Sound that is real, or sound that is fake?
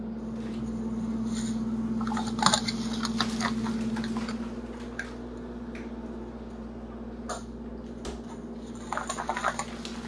real